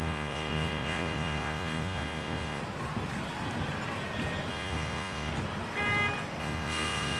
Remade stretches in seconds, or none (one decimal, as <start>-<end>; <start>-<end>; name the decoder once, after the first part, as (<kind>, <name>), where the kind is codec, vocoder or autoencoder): 0.0-2.6 (vocoder, Vocos); 4.5-5.3; 6.4-7.2